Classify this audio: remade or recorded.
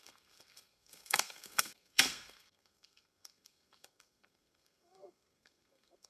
remade